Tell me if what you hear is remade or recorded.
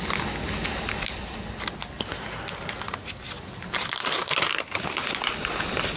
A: recorded